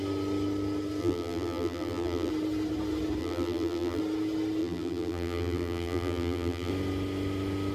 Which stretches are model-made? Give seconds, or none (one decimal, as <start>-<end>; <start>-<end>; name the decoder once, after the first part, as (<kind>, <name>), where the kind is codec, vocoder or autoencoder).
1.0-2.3 (vocoder, BigVGAN v2); 3.2-4.0; 4.6-6.7